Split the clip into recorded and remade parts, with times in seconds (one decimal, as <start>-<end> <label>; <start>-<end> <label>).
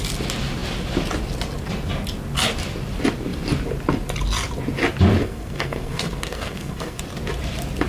0.0-5.2 recorded; 5.2-7.0 remade; 7.0-7.9 recorded